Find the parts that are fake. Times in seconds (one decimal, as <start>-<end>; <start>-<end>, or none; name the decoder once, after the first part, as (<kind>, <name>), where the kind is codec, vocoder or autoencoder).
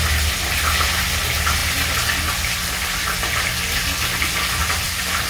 4.6-5.3 (vocoder, BigVGAN v2)